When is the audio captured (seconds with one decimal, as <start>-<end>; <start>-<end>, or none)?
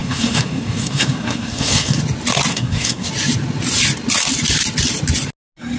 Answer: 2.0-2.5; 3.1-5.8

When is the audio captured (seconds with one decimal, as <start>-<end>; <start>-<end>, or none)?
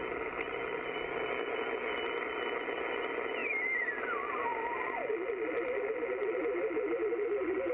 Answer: 0.0-7.7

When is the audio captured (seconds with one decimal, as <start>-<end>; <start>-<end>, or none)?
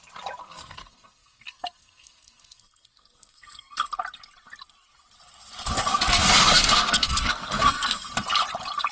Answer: 0.0-0.4; 3.9-5.9; 8.1-8.9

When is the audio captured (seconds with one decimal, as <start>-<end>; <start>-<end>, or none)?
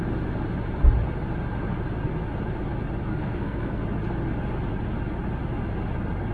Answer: 0.0-3.1; 3.8-6.3